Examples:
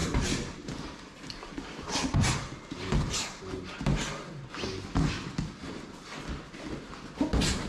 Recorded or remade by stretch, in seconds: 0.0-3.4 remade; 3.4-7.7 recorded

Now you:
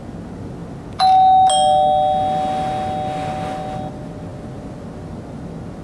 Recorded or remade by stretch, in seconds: 0.0-5.8 recorded

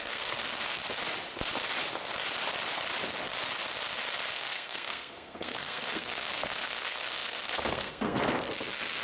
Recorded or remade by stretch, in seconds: 0.0-0.8 remade; 0.8-4.3 recorded; 4.3-9.0 remade

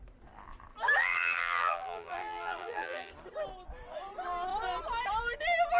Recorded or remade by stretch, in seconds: 0.0-1.0 recorded; 1.0-3.1 remade; 3.1-5.8 recorded

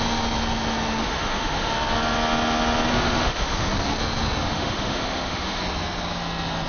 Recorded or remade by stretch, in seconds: 0.0-1.0 recorded; 1.0-1.7 remade; 1.7-2.9 recorded; 2.9-3.7 remade; 3.7-4.4 recorded; 4.4-5.6 remade; 5.6-6.7 recorded

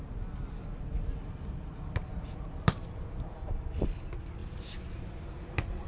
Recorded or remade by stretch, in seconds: 0.0-5.9 recorded

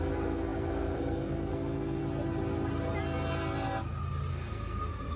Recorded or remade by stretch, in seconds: 0.0-2.0 remade; 2.0-4.3 recorded; 4.3-5.2 remade